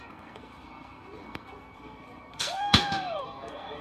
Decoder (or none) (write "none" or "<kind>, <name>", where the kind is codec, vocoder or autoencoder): codec, SNAC